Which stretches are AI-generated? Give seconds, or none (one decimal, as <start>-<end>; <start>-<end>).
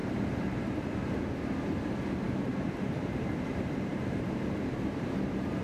0.0-0.9; 2.5-5.6